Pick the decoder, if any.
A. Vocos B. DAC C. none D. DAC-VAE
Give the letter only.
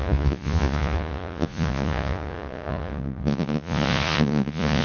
A